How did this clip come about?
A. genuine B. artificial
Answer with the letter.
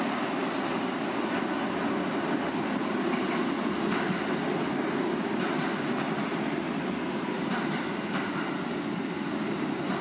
A